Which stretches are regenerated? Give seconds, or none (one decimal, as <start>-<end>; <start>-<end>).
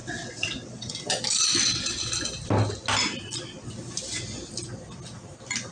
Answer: 0.0-0.9; 1.6-2.1